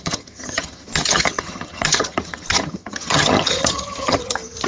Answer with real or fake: fake